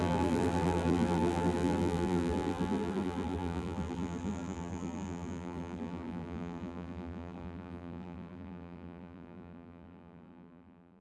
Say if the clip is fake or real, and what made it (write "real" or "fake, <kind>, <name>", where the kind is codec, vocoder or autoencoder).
fake, vocoder, BigVGAN v2